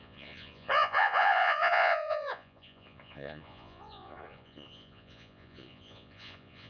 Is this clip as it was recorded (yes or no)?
no